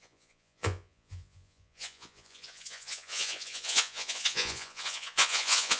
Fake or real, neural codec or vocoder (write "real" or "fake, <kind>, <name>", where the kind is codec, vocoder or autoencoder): fake, vocoder, Vocos